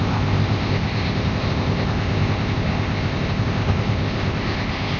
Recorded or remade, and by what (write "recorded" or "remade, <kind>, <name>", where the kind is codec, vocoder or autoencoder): remade, codec, ZipCodec